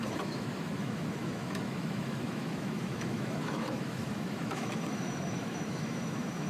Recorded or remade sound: remade